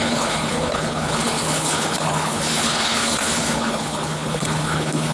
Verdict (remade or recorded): remade